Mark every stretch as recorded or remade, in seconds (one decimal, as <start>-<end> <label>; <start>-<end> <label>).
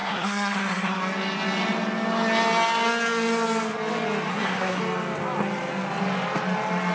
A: 0.0-1.0 remade; 1.0-4.3 recorded; 4.3-4.8 remade; 4.8-6.9 recorded